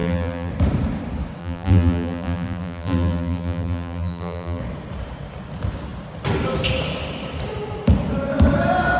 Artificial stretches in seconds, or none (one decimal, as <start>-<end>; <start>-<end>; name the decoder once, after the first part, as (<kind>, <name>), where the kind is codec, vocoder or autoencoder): 0.0-0.5 (vocoder, BigVGAN v2); 1.4-4.6